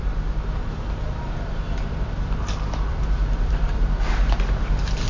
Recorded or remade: remade